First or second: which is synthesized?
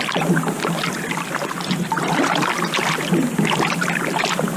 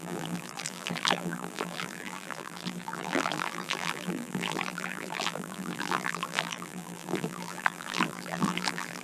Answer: second